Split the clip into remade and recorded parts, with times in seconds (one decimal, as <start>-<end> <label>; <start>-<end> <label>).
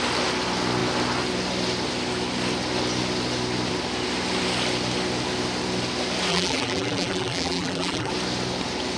0.0-6.3 recorded; 6.3-8.1 remade; 8.1-9.0 recorded